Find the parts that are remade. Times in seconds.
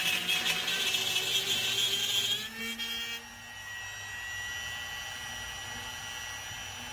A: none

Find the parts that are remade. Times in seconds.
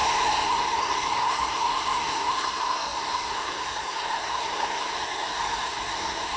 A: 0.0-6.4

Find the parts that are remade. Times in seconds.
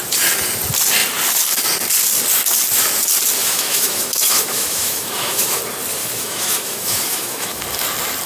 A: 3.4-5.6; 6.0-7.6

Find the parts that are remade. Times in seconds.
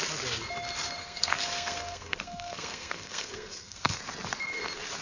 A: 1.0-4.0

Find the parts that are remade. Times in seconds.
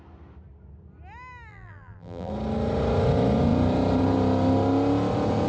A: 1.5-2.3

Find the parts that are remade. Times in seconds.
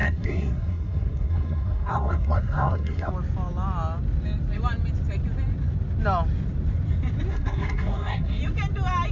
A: 0.0-3.1; 7.3-8.4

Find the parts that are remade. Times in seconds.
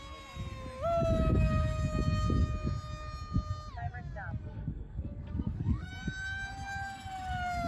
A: 4.4-5.9